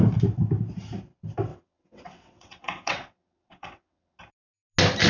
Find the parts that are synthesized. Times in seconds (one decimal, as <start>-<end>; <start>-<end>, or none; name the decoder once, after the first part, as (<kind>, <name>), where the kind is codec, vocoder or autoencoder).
1.5-4.2 (vocoder, WaveNeXt)